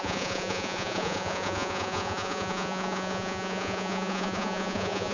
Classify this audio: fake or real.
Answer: fake